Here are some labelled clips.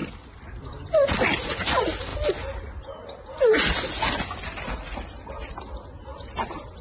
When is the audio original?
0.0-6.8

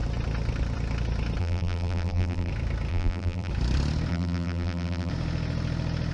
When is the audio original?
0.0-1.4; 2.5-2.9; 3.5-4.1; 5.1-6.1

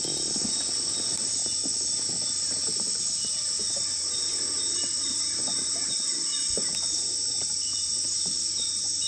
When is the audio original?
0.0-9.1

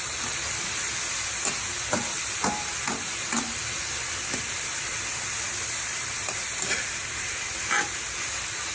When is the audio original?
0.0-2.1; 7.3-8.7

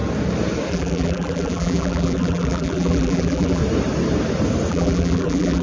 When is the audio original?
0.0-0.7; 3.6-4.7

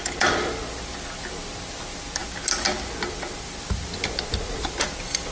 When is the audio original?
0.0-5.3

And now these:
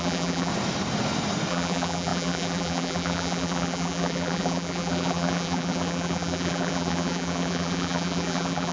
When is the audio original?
0.5-1.5

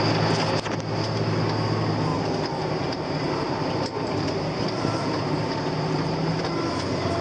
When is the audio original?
0.0-2.1; 6.4-7.2